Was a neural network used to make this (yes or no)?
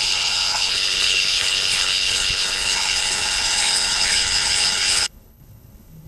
yes